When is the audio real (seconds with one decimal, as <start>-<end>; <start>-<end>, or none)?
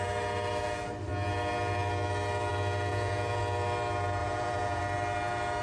0.0-2.9; 3.4-4.2; 4.8-5.6